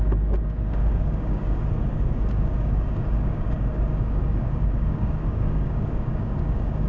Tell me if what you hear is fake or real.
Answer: fake